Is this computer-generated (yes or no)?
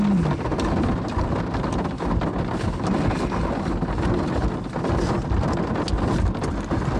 no